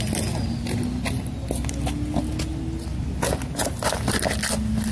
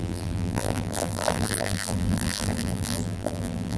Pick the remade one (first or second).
second